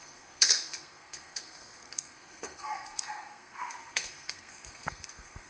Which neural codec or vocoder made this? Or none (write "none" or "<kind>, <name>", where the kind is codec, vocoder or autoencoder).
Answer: codec, SNAC